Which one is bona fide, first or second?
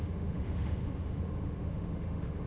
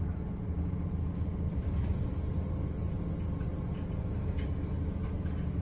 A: second